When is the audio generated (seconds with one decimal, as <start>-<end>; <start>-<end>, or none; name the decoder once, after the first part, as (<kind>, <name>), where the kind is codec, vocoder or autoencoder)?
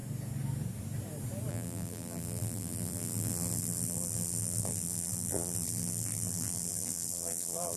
1.5-7.8 (vocoder, BigVGAN v2)